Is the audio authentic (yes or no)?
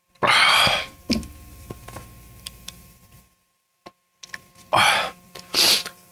yes